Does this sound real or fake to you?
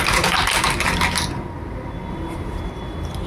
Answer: real